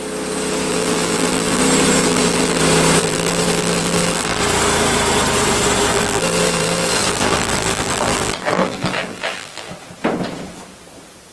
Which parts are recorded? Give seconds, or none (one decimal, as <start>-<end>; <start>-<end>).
0.0-0.7; 1.6-2.0; 2.6-3.0; 4.4-5.9; 9.7-11.3